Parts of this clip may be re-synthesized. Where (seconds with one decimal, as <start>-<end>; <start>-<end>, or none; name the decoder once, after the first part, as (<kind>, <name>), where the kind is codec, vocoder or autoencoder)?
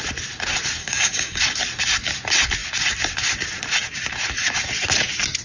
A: 0.8-1.4 (codec, DAC)